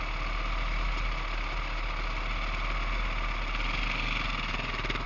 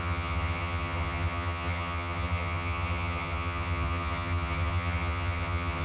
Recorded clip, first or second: first